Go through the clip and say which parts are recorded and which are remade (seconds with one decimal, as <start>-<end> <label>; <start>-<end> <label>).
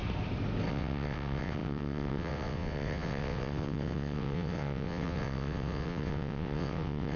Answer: 0.0-0.7 recorded; 0.7-7.2 remade